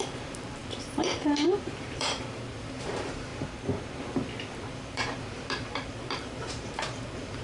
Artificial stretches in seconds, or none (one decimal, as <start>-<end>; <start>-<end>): 0.0-3.3; 4.7-7.4